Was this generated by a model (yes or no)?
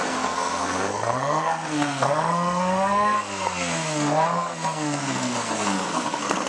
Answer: yes